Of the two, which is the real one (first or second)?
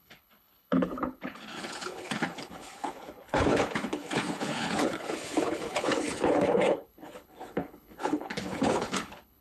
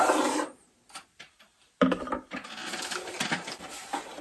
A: second